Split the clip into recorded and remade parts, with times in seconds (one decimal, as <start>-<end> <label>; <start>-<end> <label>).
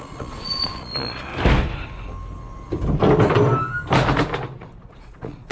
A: 0.0-1.3 remade; 1.3-4.6 recorded; 4.6-5.5 remade